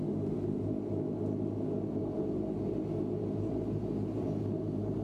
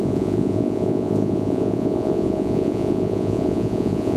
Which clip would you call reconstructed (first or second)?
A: second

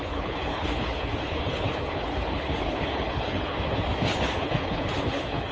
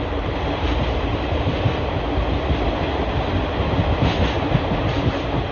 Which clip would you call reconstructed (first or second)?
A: first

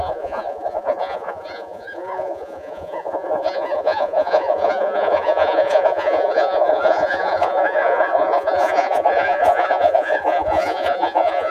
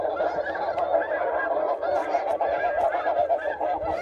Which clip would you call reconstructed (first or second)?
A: first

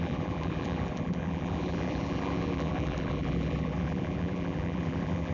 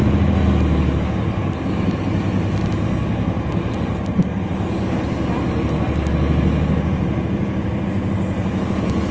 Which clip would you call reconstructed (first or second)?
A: first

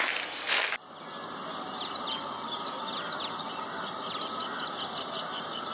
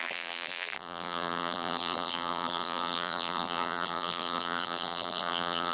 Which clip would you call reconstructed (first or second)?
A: second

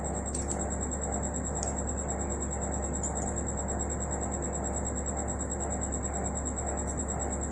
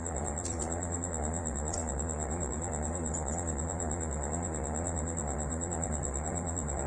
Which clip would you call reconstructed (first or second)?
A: second